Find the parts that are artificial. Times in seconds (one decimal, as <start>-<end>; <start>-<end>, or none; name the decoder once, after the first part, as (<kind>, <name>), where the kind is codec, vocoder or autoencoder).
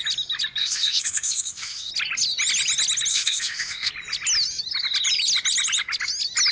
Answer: 0.6-1.9 (codec, ZipCodec); 3.1-3.9